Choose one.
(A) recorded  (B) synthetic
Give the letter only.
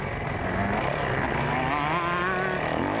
A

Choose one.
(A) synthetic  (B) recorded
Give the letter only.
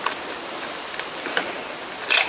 B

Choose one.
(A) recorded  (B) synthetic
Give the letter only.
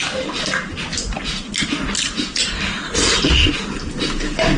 A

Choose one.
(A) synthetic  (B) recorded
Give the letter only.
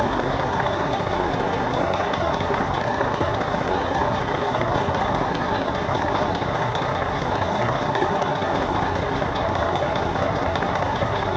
A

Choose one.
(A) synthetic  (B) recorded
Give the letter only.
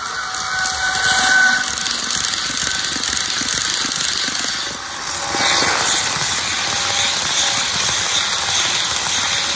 B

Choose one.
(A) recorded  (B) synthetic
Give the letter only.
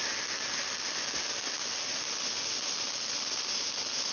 A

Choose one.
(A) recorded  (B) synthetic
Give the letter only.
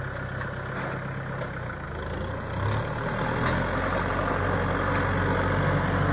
A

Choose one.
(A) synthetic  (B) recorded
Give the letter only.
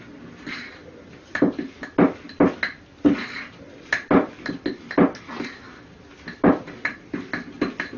B